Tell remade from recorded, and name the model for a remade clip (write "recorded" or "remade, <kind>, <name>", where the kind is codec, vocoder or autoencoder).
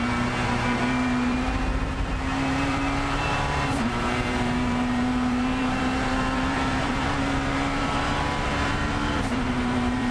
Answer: remade, vocoder, BigVGAN v2